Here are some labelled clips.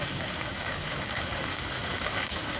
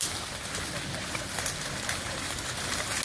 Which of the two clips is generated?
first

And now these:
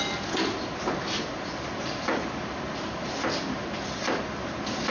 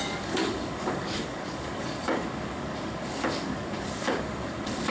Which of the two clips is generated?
second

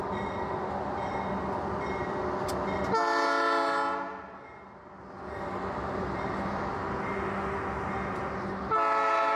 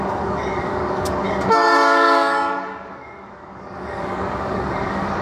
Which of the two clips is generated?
second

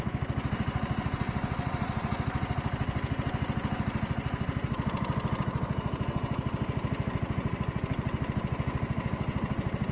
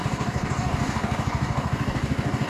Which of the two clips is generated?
second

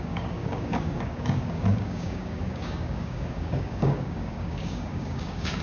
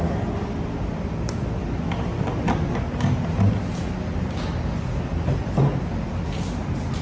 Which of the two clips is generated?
first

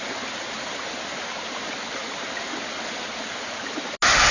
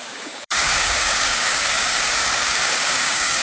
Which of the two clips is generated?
second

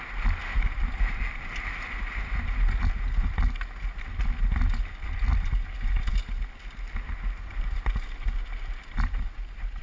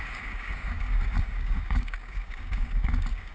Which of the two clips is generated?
second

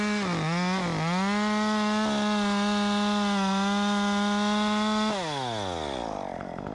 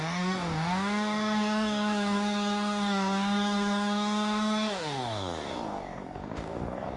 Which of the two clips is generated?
second